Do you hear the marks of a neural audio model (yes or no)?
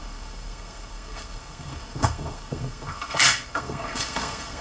yes